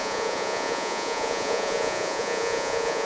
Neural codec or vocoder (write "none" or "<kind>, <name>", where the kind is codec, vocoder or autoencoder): vocoder, Vocos